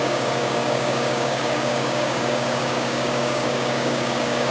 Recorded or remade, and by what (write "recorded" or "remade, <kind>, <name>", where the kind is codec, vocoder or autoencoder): remade, codec, DAC